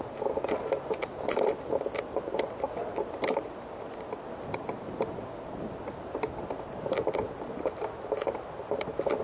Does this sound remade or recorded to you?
recorded